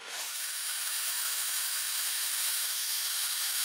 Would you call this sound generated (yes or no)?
yes